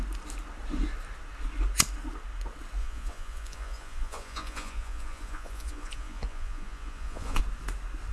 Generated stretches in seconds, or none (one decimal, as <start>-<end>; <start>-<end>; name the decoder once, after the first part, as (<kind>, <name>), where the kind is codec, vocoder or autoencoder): 2.8-7.4 (vocoder, Vocos)